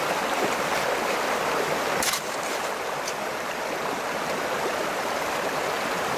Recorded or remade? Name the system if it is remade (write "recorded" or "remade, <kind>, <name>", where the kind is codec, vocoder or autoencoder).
recorded